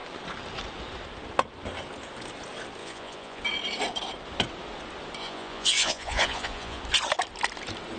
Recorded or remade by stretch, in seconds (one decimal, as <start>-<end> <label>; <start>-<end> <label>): 0.0-2.8 recorded; 2.8-3.4 remade; 3.4-5.2 recorded; 5.2-6.8 remade; 6.8-8.0 recorded